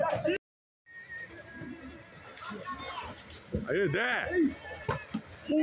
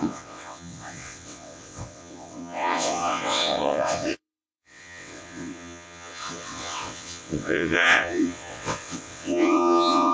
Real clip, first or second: first